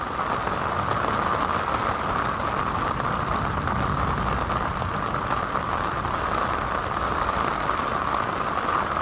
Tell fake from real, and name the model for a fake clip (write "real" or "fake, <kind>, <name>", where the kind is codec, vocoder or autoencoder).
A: real